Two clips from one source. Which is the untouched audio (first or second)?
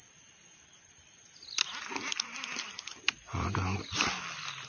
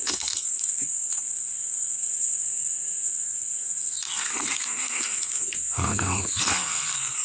first